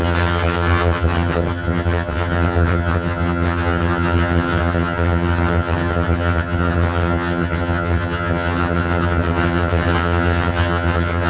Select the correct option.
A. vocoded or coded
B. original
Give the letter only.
A